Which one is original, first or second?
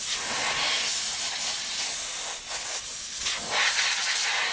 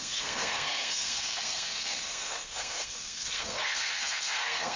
first